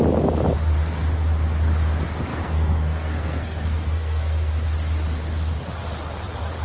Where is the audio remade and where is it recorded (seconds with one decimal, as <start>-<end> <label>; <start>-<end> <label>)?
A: 0.0-2.3 recorded; 2.3-4.5 remade; 4.5-6.6 recorded